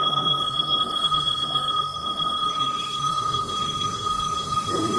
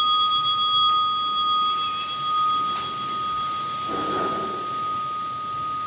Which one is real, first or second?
second